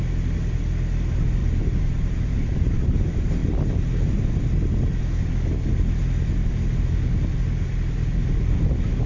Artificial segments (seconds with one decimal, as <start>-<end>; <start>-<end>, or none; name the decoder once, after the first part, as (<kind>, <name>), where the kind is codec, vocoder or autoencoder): 1.4-3.0 (vocoder, BigVGAN v2)